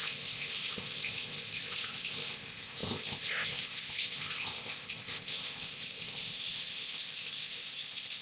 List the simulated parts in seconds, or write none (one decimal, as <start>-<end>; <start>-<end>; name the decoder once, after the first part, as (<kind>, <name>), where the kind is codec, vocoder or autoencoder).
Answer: 0.0-8.2 (codec, ZipCodec)